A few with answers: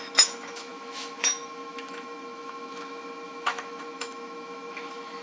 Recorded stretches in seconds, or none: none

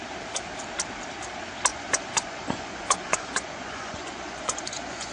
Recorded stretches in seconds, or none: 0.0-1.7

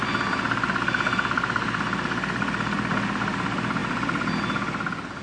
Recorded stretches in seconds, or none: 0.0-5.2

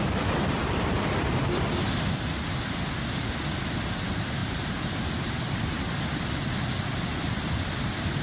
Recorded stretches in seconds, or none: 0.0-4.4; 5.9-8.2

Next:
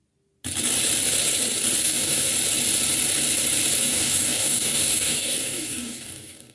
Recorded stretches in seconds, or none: 0.0-1.8; 2.3-3.8

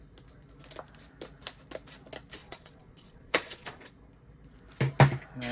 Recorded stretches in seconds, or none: 0.0-2.4; 3.9-5.5